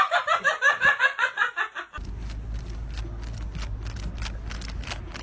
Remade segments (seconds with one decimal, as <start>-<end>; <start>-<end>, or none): 0.7-1.5